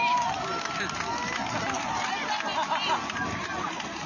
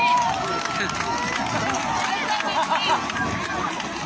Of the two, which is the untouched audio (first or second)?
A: second